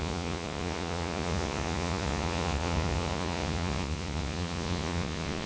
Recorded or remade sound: remade